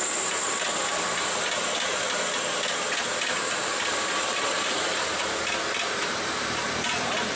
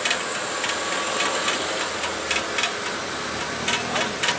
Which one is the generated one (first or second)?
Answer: first